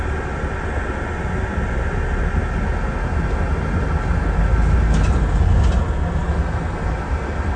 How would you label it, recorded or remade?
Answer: recorded